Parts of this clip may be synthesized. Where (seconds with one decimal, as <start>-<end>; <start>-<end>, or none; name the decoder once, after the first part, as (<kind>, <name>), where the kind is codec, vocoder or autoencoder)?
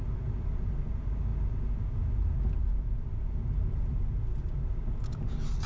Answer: none